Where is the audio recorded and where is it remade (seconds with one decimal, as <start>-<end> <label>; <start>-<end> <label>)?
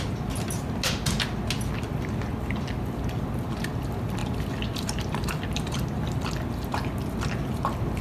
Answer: 0.0-8.0 recorded